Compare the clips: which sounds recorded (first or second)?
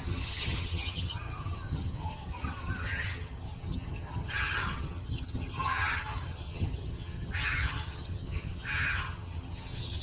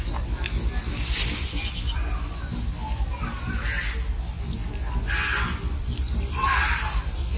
second